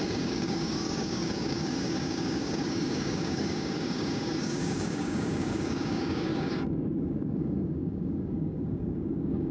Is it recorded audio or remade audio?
remade